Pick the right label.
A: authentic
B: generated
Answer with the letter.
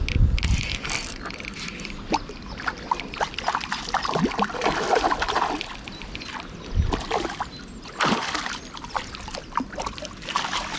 A